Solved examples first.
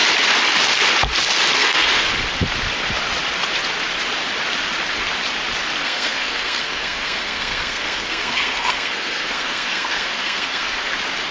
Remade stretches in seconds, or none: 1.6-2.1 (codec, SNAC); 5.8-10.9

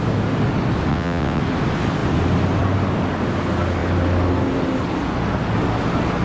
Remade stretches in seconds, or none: 0.9-1.4 (vocoder, WaveNeXt)

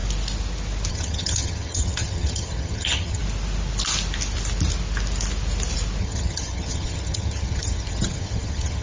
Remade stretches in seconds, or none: 0.9-3.2 (vocoder, HiFi-GAN); 6.0-8.8

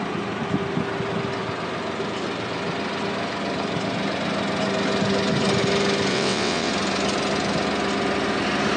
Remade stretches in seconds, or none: 6.1-6.7 (vocoder, WaveNeXt)

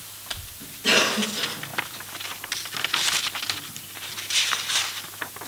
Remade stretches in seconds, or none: none

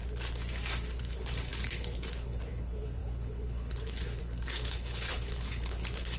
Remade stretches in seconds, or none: 1.0-6.2 (codec, HILCodec)

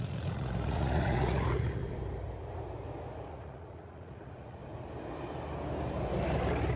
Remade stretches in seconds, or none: 0.0-1.8 (vocoder, Vocos); 3.3-4.6

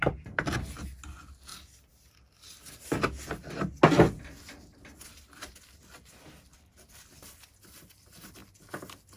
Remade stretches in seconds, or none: none